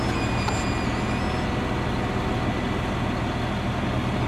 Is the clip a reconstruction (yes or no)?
no